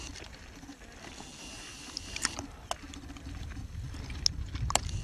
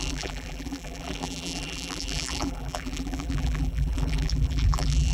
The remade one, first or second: second